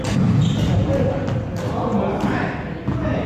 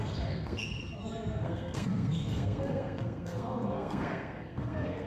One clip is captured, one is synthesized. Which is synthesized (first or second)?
second